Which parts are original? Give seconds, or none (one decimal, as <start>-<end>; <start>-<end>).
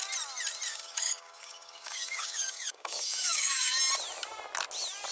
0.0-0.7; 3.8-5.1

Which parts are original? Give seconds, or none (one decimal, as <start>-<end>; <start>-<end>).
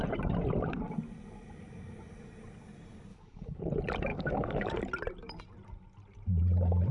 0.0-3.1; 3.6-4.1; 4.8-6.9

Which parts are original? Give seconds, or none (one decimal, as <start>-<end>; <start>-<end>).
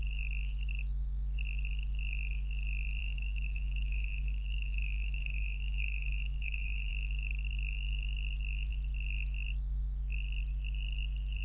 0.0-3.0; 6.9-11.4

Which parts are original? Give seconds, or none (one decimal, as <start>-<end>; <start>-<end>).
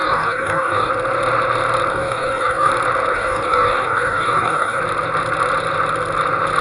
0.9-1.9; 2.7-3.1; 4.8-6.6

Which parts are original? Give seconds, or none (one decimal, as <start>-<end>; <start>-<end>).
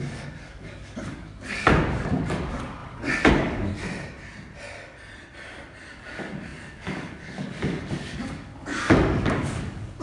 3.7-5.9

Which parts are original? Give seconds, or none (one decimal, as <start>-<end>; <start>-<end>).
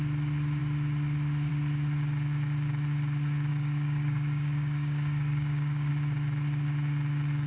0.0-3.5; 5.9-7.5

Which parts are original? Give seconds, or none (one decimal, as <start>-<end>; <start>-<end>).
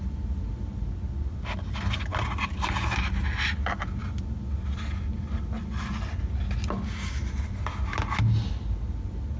0.0-9.4